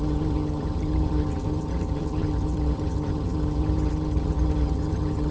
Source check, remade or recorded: remade